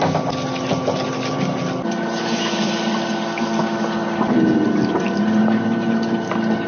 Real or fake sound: real